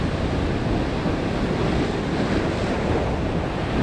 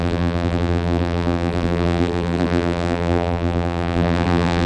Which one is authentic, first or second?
first